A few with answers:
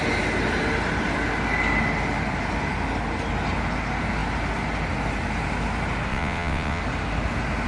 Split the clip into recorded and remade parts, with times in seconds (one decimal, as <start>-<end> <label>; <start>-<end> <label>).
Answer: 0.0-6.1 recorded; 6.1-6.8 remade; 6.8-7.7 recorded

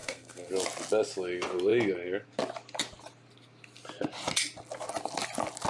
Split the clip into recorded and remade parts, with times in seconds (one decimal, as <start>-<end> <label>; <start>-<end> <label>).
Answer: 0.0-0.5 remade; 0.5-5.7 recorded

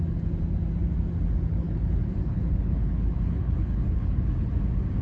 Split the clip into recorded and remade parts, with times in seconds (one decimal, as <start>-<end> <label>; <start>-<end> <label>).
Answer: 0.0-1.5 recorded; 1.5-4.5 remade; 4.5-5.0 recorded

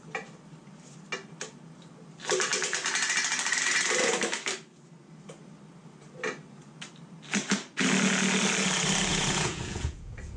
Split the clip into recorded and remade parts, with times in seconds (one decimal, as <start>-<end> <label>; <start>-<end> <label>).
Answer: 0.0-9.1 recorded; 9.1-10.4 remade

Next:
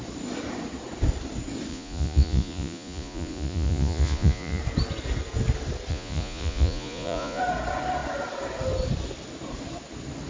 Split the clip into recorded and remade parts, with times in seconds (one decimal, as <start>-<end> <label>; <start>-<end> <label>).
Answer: 0.0-1.7 recorded; 1.7-4.6 remade; 4.6-5.9 recorded; 5.9-7.4 remade; 7.4-10.3 recorded